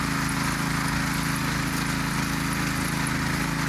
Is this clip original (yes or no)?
yes